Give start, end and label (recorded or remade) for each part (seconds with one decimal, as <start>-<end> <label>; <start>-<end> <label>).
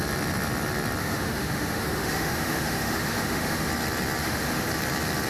0.0-1.0 recorded; 1.0-3.7 remade; 3.7-4.2 recorded; 4.2-4.7 remade; 4.7-5.3 recorded